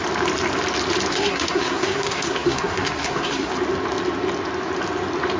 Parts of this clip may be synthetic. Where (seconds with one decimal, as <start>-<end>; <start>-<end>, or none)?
1.1-3.5